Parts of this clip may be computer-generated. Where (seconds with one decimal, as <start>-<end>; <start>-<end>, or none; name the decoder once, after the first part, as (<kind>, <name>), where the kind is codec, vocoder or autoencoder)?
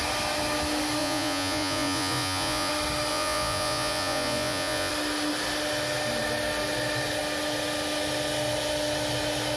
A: 1.0-2.7 (vocoder, Vocos); 3.1-4.9